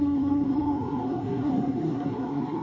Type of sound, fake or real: fake